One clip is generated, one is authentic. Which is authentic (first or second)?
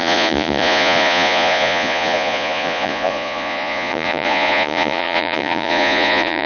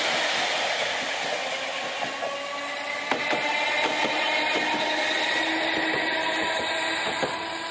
second